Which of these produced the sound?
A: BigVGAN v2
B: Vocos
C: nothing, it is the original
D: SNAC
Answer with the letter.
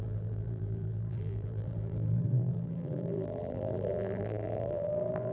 A